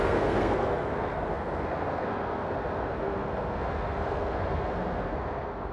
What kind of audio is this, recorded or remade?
remade